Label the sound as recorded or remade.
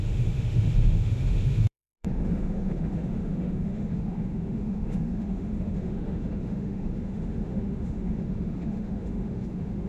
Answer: remade